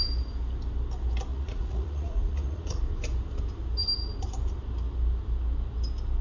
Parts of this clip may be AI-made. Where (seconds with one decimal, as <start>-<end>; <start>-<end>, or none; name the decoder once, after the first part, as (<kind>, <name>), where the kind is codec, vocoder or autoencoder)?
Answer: 1.3-2.8 (vocoder, Vocos)